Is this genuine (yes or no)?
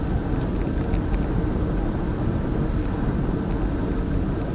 yes